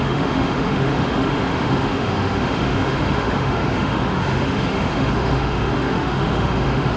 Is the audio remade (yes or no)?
yes